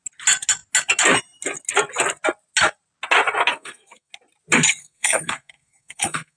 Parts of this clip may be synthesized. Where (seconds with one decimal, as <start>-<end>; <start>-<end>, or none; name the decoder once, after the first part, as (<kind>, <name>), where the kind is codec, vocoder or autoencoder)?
3.5-4.1 (codec, SNAC); 4.8-6.4